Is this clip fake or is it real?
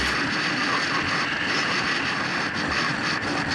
real